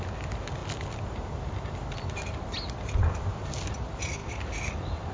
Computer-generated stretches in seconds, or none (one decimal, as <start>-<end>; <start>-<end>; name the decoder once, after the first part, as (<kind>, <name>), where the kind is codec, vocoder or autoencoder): none